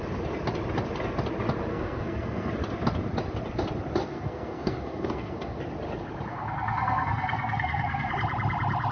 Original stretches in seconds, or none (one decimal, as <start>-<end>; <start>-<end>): 0.0-1.7; 2.5-4.1; 5.6-6.3; 8.1-8.9